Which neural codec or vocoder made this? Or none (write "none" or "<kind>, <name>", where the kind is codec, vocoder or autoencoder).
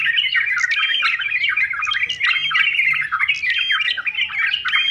none